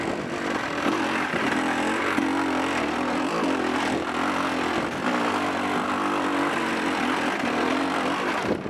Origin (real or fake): real